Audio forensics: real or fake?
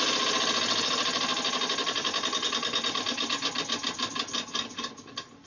real